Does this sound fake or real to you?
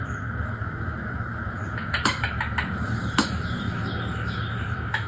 fake